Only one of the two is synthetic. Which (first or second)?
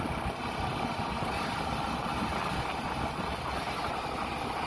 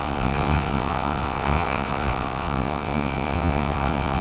second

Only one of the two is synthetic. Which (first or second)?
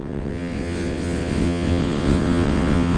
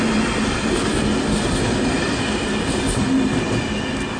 first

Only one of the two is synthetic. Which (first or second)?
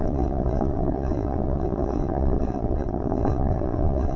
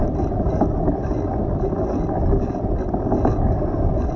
first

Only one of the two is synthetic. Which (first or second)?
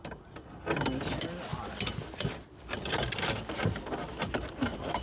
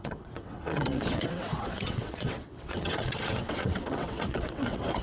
second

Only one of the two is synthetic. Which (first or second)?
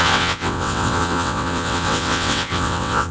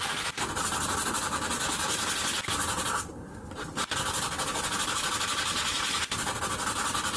first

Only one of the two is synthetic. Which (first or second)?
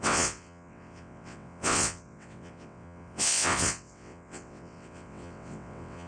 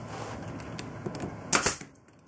first